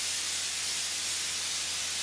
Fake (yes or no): no